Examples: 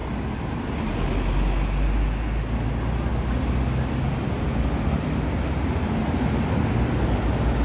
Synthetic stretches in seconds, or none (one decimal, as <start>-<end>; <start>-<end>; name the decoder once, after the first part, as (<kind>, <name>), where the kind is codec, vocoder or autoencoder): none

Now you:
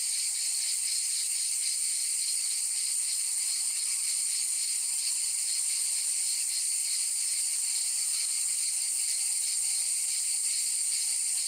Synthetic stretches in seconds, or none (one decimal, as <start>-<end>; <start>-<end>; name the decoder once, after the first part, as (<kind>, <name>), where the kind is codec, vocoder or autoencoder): 0.0-2.1 (vocoder, BigVGAN v2); 5.7-8.1; 9.8-11.5

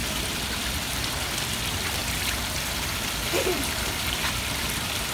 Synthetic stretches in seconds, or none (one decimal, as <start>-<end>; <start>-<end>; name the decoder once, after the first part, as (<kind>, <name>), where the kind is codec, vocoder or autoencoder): 0.0-0.9 (vocoder, BigVGAN v2); 2.0-5.1

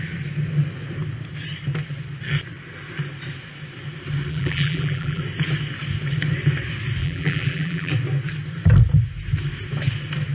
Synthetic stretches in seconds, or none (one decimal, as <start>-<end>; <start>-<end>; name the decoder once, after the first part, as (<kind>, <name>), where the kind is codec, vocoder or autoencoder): 4.3-5.2 (vocoder, BigVGAN v2); 7.0-7.9